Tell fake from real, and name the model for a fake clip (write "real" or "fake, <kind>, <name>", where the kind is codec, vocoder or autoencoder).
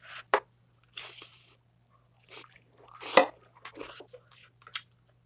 real